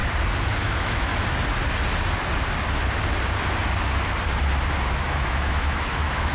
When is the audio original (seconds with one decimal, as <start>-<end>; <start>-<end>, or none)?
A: 0.0-0.6; 1.1-4.9